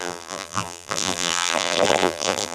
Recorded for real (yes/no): no